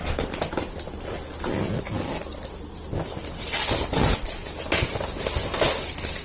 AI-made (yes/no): no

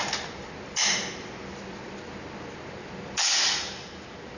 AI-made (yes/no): no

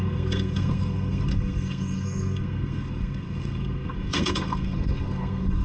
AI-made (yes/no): yes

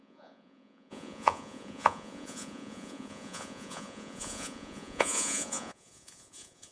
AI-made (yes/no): yes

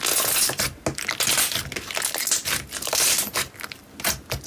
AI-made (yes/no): no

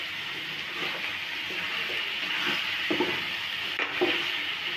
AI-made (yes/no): no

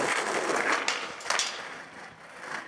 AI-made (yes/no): no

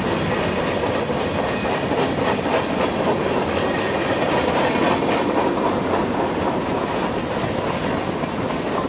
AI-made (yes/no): no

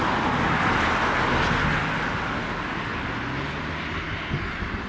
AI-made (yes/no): no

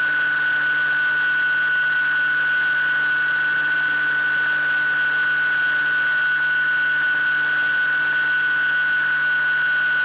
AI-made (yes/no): no